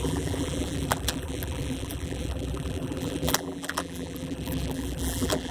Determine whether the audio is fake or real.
fake